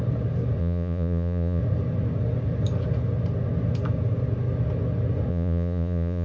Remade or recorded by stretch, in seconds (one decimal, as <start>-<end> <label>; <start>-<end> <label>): 0.0-0.6 recorded; 0.6-1.6 remade; 1.6-5.3 recorded; 5.3-6.2 remade